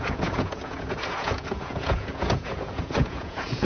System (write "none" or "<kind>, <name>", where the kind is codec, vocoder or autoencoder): vocoder, Vocos